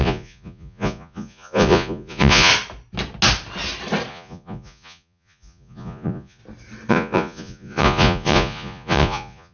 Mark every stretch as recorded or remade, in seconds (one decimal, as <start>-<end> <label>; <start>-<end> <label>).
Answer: 0.0-2.5 remade; 2.5-4.1 recorded; 4.1-6.4 remade; 6.4-6.9 recorded; 6.9-9.5 remade